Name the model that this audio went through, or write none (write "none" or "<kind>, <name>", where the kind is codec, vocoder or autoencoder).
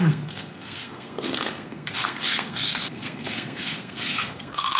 codec, SNAC